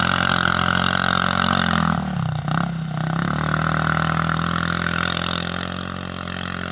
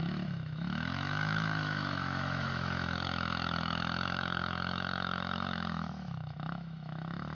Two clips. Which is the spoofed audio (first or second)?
second